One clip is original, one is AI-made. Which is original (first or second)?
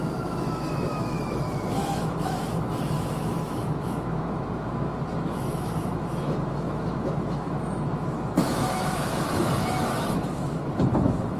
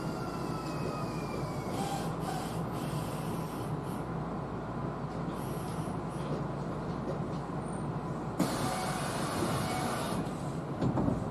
second